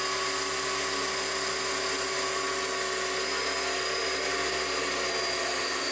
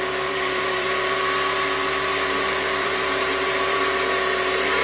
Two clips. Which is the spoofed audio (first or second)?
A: second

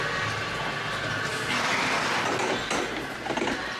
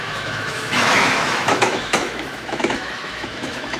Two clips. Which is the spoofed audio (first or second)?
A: second